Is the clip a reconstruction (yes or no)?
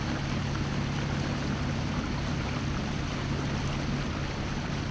no